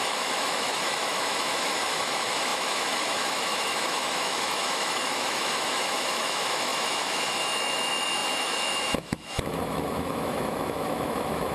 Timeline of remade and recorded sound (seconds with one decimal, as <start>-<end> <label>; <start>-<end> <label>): 0.0-11.5 remade